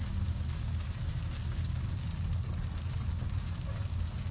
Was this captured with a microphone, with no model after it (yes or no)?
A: yes